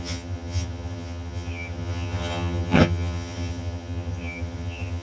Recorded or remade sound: remade